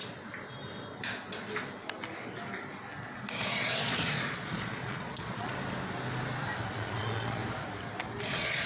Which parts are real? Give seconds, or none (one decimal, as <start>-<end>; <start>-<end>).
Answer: 0.0-3.4; 5.5-6.7; 7.4-8.2